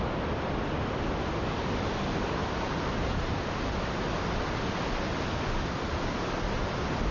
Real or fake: real